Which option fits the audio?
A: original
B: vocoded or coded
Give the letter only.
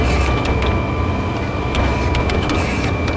A